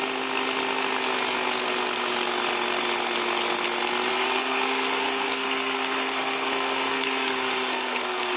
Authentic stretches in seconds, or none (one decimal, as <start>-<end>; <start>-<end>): 0.0-4.1